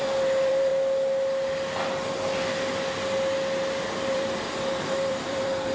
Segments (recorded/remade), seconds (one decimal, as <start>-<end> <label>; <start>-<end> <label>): 0.0-0.7 remade; 0.7-4.1 recorded; 4.1-5.7 remade